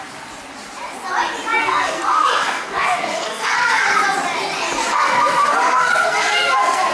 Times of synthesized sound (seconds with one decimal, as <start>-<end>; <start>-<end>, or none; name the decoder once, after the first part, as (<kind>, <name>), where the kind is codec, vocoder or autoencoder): 1.6-4.0 (codec, SNAC); 4.9-6.9